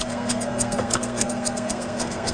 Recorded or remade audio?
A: remade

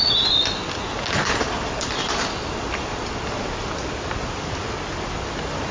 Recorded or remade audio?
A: recorded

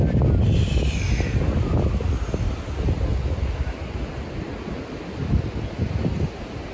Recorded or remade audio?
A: recorded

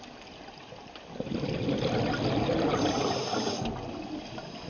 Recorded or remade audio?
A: recorded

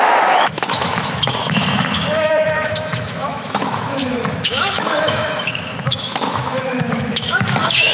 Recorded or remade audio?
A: remade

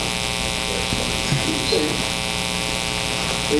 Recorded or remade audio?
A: recorded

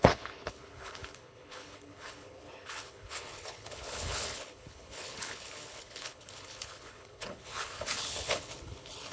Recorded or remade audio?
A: remade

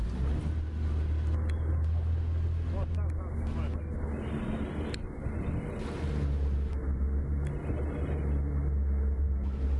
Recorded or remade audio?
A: recorded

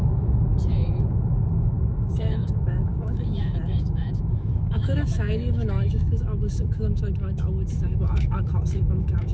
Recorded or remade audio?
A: remade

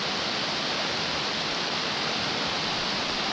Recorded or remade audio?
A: recorded